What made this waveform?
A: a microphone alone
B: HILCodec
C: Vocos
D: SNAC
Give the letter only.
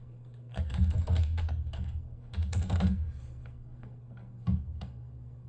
D